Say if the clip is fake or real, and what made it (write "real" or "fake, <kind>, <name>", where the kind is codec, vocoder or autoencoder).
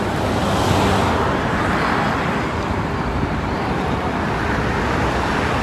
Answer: real